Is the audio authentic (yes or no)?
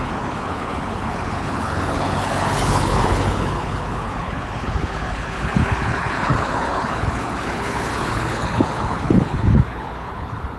no